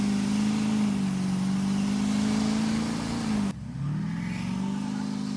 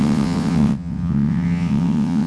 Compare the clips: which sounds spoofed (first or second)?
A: second